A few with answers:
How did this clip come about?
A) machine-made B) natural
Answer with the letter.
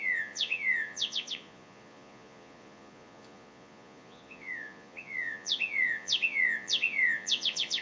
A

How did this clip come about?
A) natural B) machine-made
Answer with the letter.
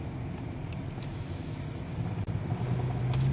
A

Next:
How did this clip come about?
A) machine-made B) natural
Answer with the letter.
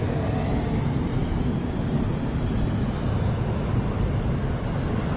B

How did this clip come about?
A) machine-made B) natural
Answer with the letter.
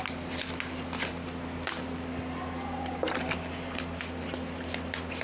B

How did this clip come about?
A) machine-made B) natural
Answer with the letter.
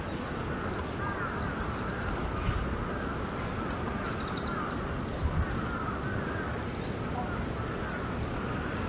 B